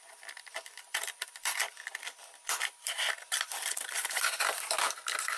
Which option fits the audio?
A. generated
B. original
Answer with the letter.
A